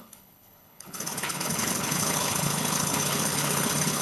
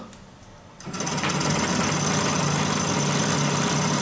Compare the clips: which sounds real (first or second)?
second